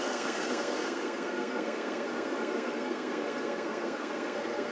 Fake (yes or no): yes